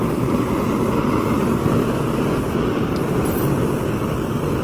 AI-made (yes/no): no